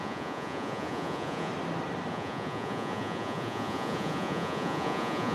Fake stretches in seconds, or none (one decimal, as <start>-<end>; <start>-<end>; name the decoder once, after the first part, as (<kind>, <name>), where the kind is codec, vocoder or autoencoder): 0.0-1.5 (vocoder, Vocos); 2.1-5.3